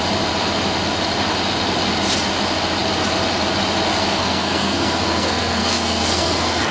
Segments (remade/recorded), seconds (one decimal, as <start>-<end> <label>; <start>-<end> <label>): 0.0-4.0 recorded; 4.0-6.7 remade